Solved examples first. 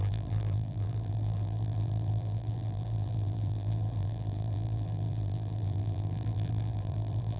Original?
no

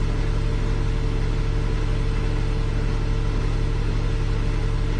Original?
yes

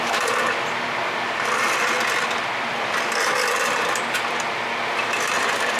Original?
yes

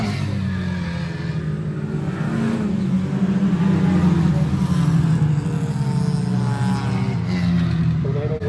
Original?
yes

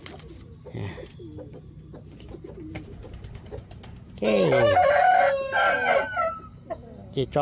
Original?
yes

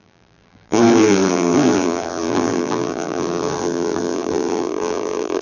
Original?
no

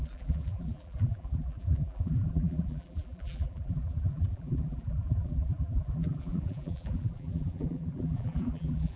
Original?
no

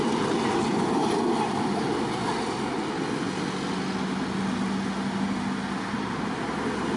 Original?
yes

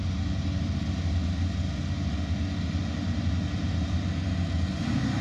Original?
yes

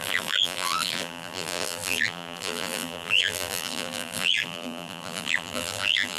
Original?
no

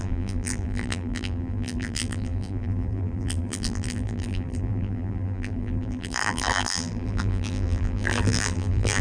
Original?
no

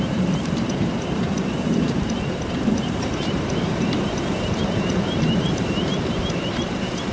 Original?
no